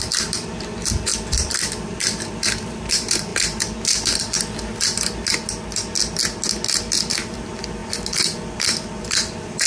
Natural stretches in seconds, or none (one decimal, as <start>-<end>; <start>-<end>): 3.3-7.1